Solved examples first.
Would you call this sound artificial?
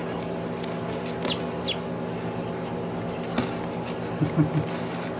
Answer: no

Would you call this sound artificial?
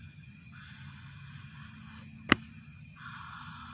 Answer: no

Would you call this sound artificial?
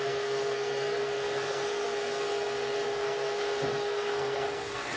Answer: yes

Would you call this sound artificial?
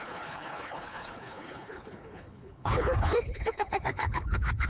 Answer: yes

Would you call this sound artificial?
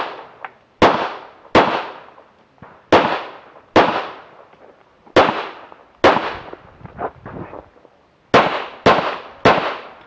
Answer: no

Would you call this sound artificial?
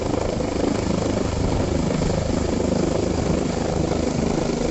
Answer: no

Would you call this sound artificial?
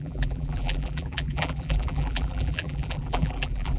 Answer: yes